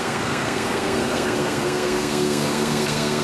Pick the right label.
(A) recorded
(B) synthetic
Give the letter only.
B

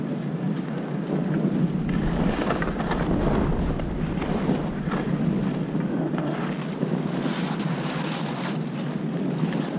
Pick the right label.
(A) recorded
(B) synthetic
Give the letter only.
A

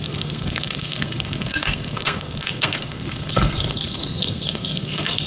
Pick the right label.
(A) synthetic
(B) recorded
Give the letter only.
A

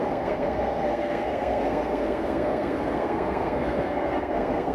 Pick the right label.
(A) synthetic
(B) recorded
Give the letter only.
A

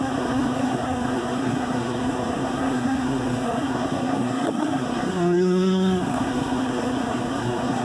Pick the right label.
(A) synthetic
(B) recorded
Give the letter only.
A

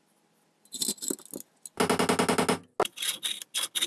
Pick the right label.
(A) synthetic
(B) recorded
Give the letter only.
B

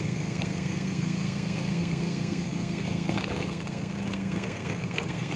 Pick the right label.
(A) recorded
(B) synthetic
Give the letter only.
B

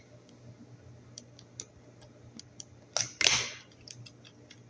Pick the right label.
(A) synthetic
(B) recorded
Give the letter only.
B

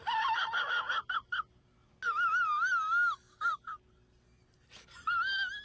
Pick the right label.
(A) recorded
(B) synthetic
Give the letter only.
A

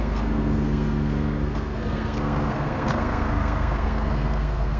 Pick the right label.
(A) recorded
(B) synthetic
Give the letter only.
B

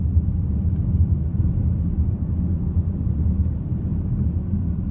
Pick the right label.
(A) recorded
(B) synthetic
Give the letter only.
A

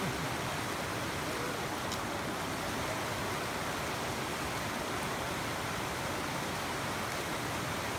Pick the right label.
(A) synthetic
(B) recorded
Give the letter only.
B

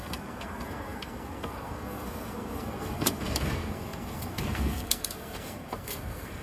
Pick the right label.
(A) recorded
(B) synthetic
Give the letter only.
B